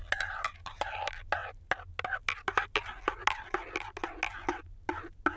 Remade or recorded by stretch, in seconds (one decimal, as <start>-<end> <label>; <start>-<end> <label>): 0.0-5.4 recorded